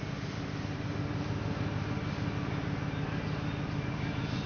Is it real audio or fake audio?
real